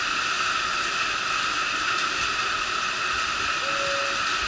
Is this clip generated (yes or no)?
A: no